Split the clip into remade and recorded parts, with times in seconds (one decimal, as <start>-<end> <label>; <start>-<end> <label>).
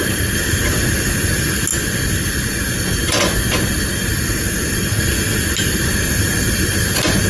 0.0-7.3 recorded